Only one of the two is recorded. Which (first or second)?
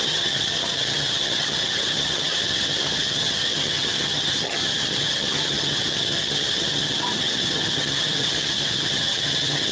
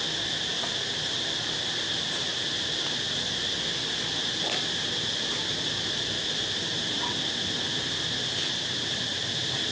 second